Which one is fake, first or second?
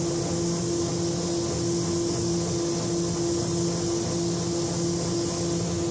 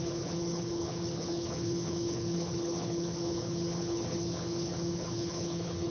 second